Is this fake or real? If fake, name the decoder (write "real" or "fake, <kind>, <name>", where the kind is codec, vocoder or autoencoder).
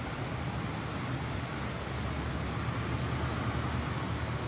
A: real